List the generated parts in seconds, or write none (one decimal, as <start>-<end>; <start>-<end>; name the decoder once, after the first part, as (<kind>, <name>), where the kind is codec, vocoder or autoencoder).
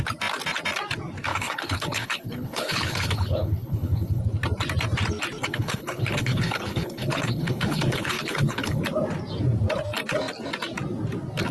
1.3-4.2 (codec, HILCodec); 5.5-8.8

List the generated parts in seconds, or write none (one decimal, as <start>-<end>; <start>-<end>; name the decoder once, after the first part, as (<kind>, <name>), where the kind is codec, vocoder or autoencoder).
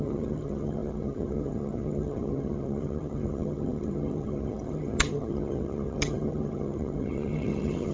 0.0-7.9 (vocoder, HiFi-GAN)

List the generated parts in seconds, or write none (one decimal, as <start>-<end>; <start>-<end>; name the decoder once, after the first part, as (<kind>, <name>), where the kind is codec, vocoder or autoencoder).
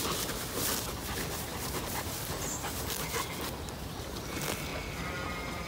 none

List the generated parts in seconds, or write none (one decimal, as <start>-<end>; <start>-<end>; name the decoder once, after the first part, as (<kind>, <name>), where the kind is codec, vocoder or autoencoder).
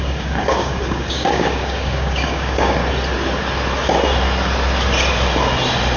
0.0-2.8 (codec, DAC)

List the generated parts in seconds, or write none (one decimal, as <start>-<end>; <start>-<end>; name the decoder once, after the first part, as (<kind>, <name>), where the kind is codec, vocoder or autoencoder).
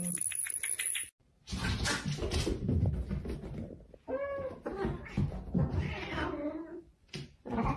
6.7-7.8 (vocoder, Vocos)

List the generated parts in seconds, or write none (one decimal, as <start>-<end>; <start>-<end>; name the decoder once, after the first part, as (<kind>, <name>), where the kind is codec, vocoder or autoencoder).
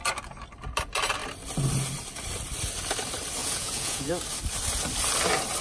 3.4-4.1 (vocoder, Vocos)